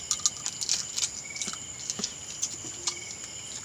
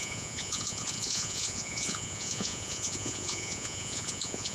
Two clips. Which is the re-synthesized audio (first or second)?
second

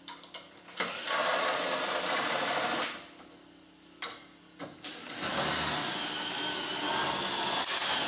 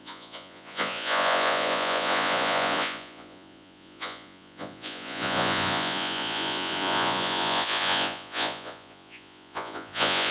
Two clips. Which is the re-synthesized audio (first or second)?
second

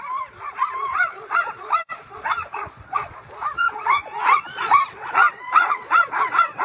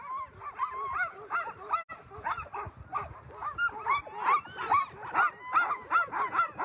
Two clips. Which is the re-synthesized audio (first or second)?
first